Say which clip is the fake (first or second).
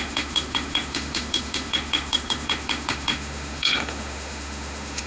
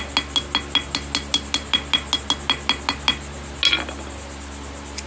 first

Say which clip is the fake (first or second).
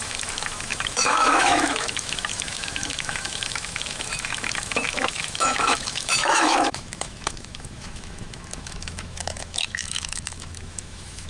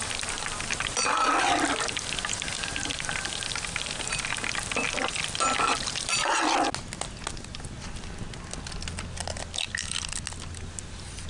first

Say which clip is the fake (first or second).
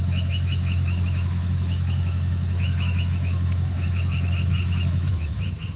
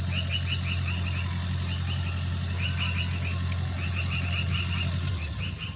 first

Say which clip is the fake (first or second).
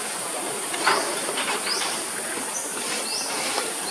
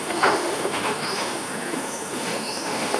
second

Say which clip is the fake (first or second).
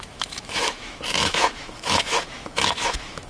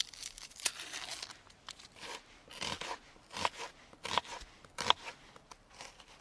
first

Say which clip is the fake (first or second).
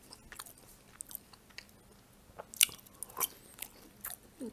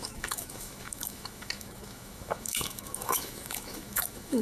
second